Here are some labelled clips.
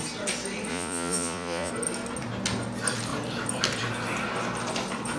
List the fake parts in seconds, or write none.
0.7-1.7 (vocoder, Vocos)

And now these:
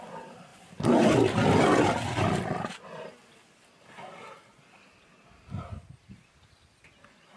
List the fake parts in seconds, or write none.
none